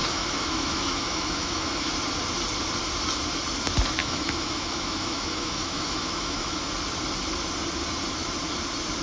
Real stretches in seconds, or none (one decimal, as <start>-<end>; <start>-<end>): 1.9-4.0; 6.7-9.0